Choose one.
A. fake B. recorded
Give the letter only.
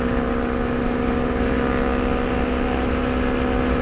B